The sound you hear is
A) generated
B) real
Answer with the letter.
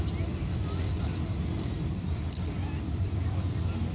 A